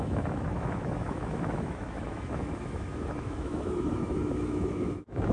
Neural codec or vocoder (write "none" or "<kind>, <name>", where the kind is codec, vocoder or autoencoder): autoencoder, DAC-VAE